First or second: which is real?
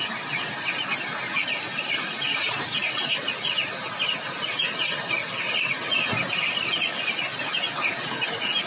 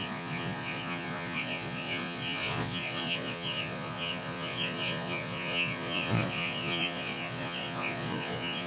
first